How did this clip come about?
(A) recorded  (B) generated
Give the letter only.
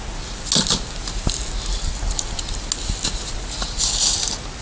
A